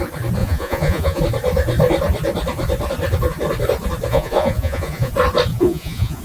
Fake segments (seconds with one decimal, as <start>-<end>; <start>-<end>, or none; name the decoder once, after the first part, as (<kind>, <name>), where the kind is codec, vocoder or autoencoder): 0.4-1.2 (vocoder, Vocos); 4.1-5.1; 5.5-6.2